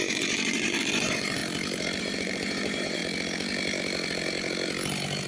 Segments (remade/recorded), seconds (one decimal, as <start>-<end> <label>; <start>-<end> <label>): 0.0-1.4 remade; 1.4-2.0 recorded; 2.0-3.0 remade; 3.0-5.3 recorded